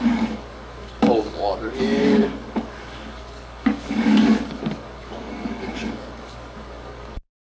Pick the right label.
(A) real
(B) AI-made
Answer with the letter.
B